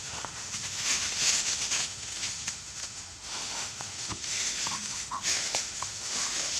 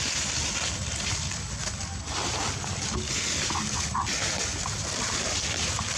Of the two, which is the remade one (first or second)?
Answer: first